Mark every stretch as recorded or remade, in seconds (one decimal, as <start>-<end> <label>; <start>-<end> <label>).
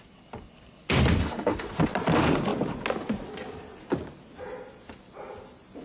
0.0-1.2 recorded; 1.2-1.8 remade; 1.8-5.8 recorded